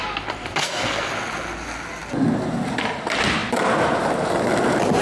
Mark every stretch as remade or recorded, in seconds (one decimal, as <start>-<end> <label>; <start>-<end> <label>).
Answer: 0.0-0.6 recorded; 0.6-1.1 remade; 1.1-5.0 recorded